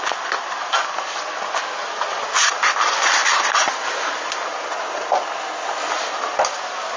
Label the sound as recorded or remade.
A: recorded